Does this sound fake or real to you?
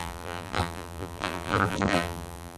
fake